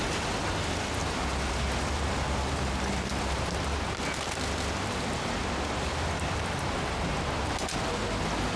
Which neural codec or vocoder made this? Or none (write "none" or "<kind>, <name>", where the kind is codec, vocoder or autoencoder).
none